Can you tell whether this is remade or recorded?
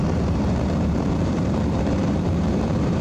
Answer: remade